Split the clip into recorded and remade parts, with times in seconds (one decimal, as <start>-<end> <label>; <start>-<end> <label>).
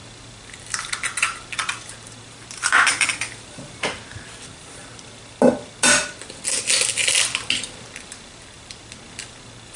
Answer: 0.0-9.8 recorded